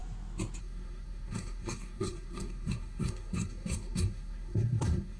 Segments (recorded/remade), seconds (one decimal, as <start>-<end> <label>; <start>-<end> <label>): 0.0-0.6 recorded; 0.6-5.2 remade

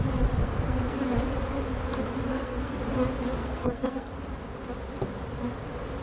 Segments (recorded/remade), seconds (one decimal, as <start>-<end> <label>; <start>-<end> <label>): 0.0-0.4 recorded; 0.4-1.0 remade; 1.0-2.3 recorded; 2.3-2.8 remade; 2.8-3.4 recorded; 3.4-4.1 remade; 4.1-6.0 recorded

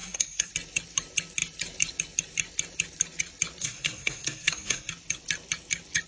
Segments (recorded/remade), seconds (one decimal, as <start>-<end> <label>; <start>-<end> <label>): 0.0-0.5 remade; 0.5-3.6 recorded; 3.6-4.9 remade; 4.9-6.1 recorded